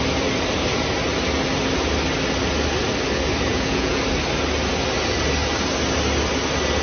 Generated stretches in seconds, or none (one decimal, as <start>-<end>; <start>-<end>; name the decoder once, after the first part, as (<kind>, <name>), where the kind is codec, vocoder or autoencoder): 3.5-4.0 (vocoder, Vocos)